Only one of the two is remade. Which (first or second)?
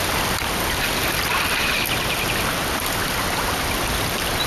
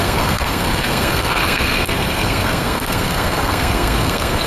second